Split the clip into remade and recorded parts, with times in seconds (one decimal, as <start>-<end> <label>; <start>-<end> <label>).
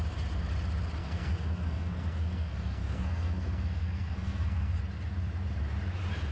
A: 0.0-1.0 recorded; 1.0-4.8 remade; 4.8-6.3 recorded